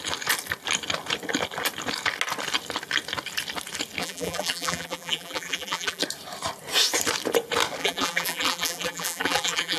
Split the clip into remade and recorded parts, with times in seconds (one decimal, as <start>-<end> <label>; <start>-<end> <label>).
0.0-4.0 recorded; 4.0-6.0 remade; 6.0-7.8 recorded; 7.8-9.8 remade